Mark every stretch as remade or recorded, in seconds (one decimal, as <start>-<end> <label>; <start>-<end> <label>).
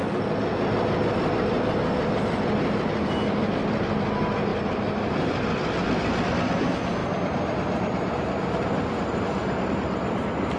0.0-10.6 recorded